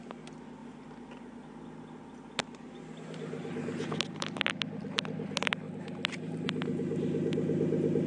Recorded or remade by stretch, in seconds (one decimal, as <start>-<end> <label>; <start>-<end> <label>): 0.0-8.1 recorded